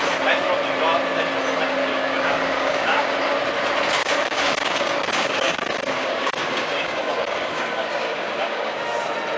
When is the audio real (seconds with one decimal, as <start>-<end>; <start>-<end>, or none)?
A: 0.0-1.8; 3.2-4.0; 8.8-9.4